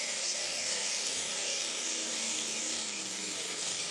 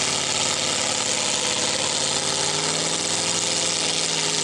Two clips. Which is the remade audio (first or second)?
first